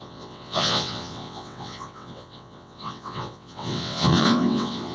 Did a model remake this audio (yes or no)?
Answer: yes